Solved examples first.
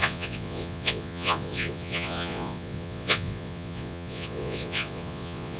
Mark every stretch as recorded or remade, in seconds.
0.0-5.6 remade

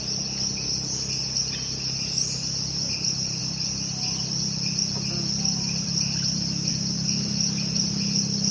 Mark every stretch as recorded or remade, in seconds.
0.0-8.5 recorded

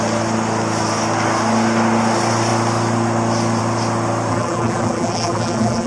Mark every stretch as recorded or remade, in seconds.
0.0-4.3 recorded; 4.3-5.9 remade